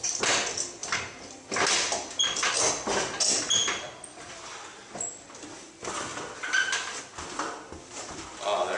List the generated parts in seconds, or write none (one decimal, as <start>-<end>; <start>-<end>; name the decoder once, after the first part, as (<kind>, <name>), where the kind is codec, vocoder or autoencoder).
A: none